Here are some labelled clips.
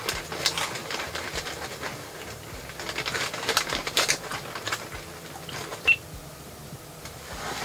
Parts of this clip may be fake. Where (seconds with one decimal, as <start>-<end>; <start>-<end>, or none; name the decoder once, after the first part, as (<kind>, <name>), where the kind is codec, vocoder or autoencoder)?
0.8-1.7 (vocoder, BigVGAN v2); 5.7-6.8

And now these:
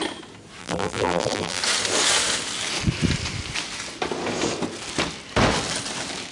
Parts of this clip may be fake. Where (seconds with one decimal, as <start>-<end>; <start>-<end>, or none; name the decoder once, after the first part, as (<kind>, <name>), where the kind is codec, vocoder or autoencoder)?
0.6-1.6 (vocoder, BigVGAN v2)

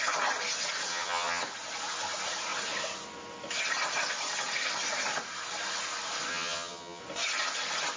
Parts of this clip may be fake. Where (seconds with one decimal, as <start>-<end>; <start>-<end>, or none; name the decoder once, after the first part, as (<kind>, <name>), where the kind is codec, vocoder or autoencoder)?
0.9-1.4 (vocoder, HiFi-GAN); 6.3-7.0

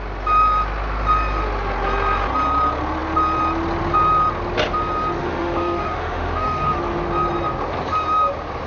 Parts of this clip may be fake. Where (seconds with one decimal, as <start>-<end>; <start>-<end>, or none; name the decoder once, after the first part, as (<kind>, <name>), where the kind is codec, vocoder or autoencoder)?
5.2-6.8 (autoencoder, DAC-VAE)

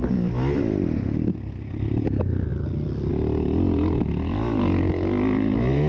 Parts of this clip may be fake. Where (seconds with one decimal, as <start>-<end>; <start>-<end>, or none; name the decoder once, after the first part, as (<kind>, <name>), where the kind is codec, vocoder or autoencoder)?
1.3-1.9 (codec, SNAC)

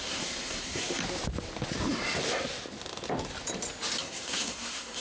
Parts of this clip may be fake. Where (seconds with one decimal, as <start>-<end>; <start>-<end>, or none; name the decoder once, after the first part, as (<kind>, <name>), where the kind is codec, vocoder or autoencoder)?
0.0-1.0 (codec, SNAC); 4.0-5.0

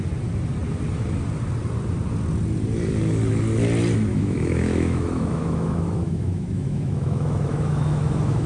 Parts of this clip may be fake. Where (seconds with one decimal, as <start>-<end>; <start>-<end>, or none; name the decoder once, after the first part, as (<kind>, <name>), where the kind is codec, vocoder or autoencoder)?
4.1-8.5 (autoencoder, DAC-VAE)

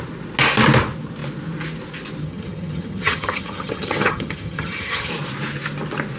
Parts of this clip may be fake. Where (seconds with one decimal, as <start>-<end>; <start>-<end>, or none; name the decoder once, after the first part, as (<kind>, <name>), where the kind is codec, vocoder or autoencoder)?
2.2-5.1 (vocoder, HiFi-GAN)